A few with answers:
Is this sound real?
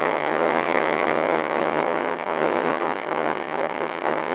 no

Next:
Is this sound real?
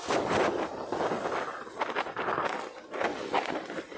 yes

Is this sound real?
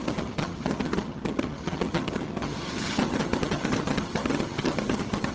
no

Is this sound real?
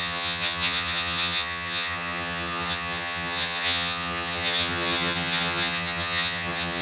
no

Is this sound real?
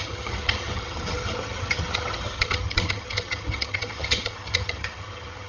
no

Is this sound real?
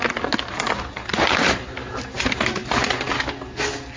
yes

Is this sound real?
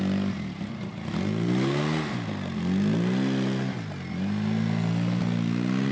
yes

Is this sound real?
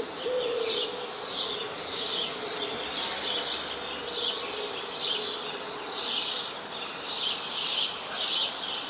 yes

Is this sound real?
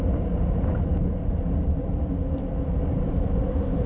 yes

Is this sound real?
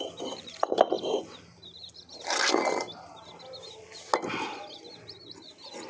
yes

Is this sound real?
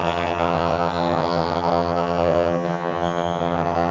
no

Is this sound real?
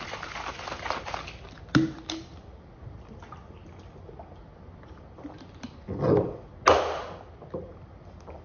yes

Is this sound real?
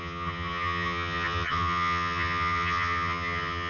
no